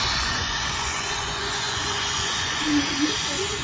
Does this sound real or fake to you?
fake